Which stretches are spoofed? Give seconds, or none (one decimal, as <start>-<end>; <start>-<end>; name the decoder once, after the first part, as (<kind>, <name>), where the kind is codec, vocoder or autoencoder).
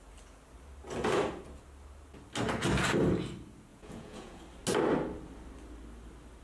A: 3.7-4.4 (vocoder, Vocos)